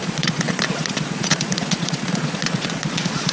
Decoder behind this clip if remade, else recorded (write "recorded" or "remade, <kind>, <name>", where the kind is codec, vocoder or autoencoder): remade, vocoder, Vocos